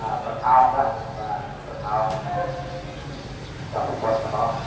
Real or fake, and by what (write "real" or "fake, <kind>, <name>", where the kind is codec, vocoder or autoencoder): real